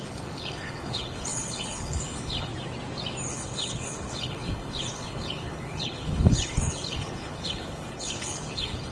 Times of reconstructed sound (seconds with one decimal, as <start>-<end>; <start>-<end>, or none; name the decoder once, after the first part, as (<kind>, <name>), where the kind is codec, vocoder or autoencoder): 0.0-2.5 (codec, HILCodec); 3.3-8.9